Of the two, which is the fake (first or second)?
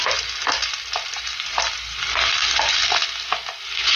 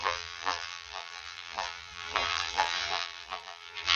second